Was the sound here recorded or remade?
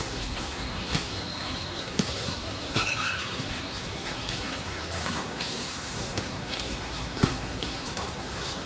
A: remade